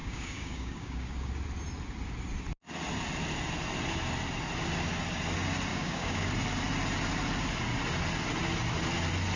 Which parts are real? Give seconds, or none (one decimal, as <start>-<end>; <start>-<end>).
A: 1.3-5.7; 6.3-9.4

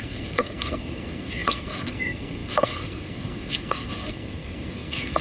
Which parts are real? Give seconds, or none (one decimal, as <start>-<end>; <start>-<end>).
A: none